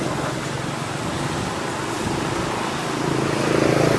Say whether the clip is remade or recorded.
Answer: remade